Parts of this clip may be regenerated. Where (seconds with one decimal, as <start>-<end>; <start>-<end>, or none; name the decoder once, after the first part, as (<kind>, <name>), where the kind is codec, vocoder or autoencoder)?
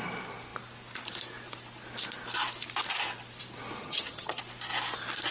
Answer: 3.8-4.4 (vocoder, HiFi-GAN)